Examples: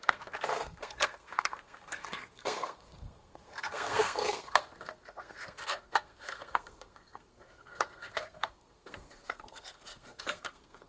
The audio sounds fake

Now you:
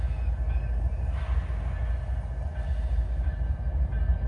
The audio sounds real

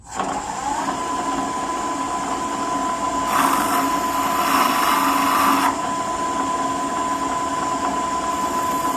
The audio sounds real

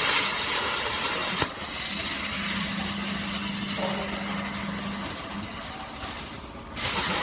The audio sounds real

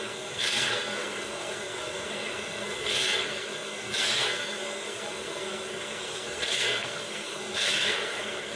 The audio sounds fake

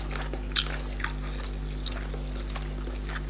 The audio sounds real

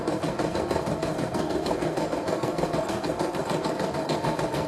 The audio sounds fake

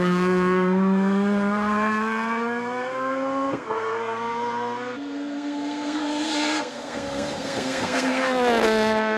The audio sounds fake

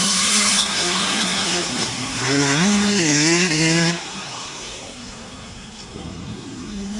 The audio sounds fake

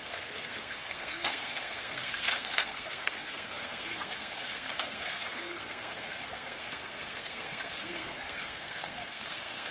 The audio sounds fake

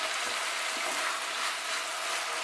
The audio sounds real